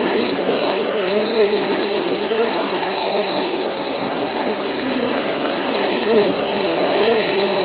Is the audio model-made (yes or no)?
yes